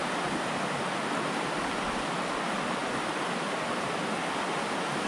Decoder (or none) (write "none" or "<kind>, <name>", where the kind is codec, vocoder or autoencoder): none